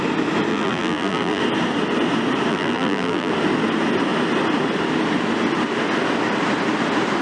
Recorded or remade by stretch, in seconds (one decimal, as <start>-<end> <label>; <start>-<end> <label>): 0.0-0.5 recorded; 0.5-1.4 remade; 1.4-2.5 recorded; 2.5-3.3 remade; 3.3-7.2 recorded